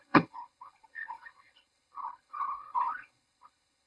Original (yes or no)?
no